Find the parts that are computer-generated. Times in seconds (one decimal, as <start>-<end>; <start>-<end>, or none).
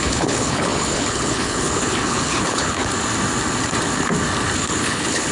0.0-2.8; 4.6-5.3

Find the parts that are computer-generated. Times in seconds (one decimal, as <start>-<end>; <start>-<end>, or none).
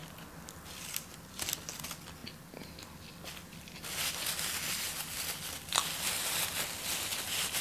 none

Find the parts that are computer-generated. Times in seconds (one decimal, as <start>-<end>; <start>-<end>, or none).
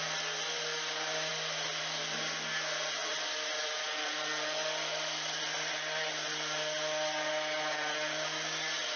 3.0-6.1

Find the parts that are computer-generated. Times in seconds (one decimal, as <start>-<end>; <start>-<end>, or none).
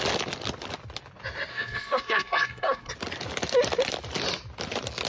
1.5-2.9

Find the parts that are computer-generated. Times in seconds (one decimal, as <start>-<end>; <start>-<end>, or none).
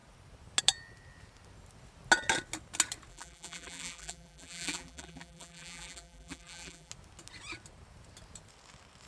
3.1-6.9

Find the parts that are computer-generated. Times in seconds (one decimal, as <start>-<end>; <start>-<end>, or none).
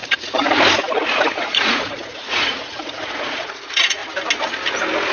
1.3-4.0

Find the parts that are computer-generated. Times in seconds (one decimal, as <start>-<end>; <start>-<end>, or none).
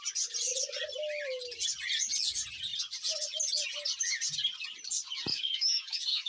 5.3-6.3